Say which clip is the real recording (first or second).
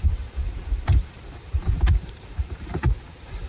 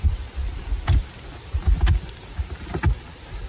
second